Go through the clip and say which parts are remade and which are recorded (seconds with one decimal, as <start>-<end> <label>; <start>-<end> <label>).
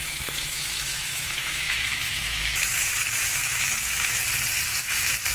0.0-4.2 remade; 4.2-4.8 recorded; 4.8-5.3 remade